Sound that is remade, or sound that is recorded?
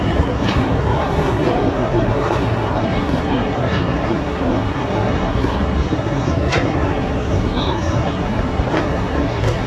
remade